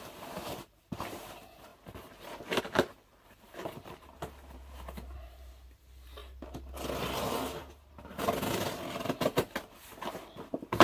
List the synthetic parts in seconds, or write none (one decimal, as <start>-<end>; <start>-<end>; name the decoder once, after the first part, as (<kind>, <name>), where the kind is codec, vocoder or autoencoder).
0.0-6.2 (vocoder, BigVGAN v2); 7.6-8.1; 9.6-10.8